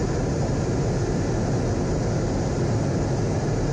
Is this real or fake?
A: real